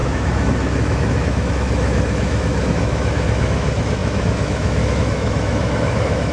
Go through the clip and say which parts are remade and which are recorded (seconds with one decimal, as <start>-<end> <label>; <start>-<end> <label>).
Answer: 0.0-6.3 remade

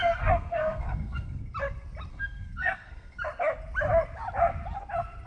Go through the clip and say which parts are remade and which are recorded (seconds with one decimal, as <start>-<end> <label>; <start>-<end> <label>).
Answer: 0.0-1.4 remade; 1.4-2.1 recorded; 2.1-3.2 remade; 3.2-5.3 recorded

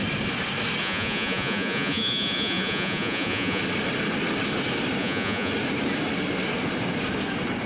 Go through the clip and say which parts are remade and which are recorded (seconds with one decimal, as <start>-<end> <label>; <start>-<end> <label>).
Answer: 0.0-0.8 recorded; 0.8-3.6 remade; 3.6-5.0 recorded; 5.0-5.5 remade; 5.5-7.7 recorded